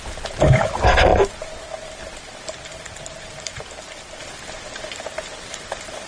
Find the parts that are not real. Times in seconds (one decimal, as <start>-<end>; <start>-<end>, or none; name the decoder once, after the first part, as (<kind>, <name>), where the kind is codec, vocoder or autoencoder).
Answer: none